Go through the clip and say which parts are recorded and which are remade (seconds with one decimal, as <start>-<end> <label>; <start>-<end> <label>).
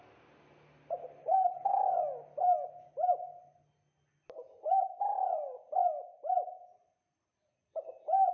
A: 0.0-1.2 recorded; 1.2-1.8 remade; 1.8-8.3 recorded